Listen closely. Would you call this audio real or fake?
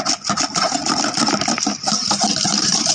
real